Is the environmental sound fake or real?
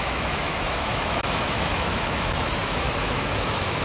fake